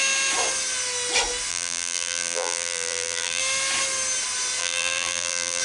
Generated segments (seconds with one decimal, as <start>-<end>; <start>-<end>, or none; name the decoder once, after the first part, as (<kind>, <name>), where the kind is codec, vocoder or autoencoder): 1.5-3.4 (vocoder, BigVGAN v2); 4.6-5.6